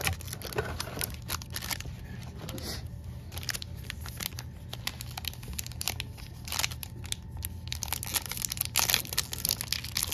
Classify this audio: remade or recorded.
recorded